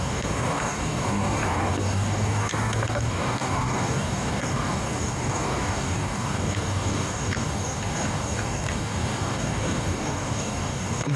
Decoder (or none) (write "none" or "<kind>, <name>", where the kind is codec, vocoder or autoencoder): codec, DAC